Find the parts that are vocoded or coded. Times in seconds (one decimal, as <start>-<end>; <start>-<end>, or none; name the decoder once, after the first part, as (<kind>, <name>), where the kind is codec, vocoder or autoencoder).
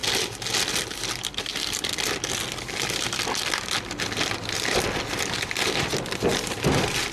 0.7-1.5 (vocoder, BigVGAN v2); 5.1-7.1